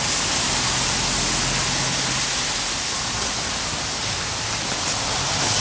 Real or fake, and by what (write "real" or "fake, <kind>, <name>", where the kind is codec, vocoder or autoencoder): real